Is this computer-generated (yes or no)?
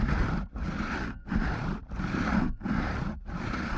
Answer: no